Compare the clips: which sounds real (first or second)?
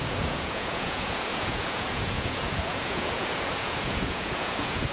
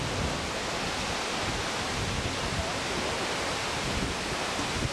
second